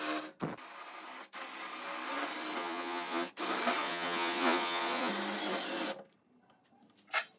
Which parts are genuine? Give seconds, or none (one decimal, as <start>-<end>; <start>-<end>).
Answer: 0.0-2.6; 3.3-3.8; 5.1-7.4